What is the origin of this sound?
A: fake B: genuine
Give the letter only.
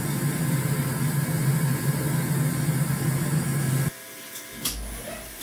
B